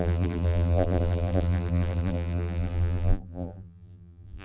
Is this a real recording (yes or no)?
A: no